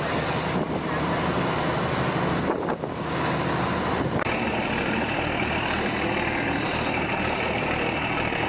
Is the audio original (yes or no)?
yes